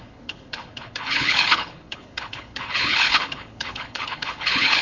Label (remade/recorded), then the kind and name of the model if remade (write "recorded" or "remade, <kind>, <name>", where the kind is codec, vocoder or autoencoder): remade, codec, HILCodec